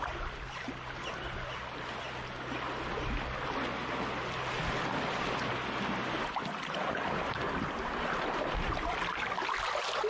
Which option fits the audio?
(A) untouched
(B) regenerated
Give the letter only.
A